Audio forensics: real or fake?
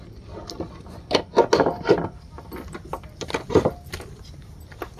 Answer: real